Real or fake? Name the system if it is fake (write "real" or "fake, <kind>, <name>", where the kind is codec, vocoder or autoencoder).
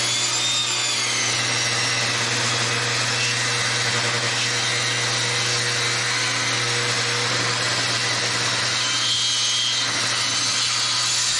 real